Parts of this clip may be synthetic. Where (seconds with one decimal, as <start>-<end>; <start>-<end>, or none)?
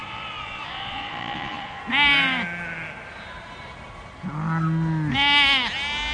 0.0-1.8